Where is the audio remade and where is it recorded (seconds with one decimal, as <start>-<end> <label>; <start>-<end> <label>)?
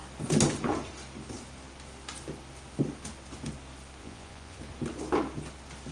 0.0-4.0 recorded; 4.0-4.6 remade; 4.6-5.9 recorded